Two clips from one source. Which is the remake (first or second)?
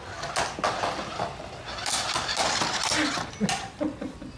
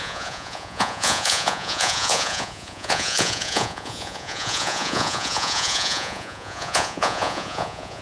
second